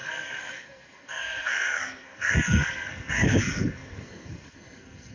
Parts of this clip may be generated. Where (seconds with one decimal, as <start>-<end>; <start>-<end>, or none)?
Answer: 0.0-5.1